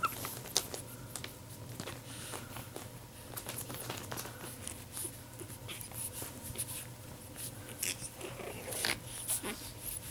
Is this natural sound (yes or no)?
yes